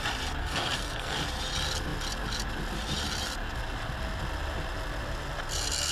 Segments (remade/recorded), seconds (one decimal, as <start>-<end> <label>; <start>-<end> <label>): 0.0-0.4 recorded; 0.4-1.2 remade; 1.2-5.9 recorded